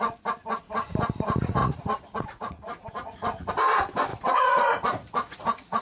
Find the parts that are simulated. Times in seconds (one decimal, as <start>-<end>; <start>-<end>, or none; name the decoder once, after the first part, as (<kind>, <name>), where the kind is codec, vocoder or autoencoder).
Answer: 1.6-3.5 (vocoder, Vocos); 4.1-5.8